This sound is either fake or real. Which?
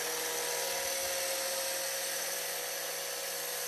real